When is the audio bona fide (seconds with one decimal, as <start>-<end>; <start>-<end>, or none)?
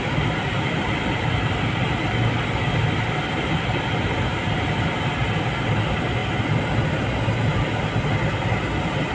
0.0-9.1